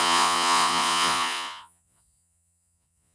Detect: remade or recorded remade